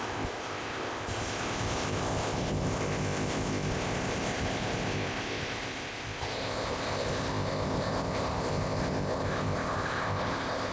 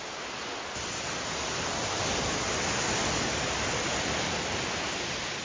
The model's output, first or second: first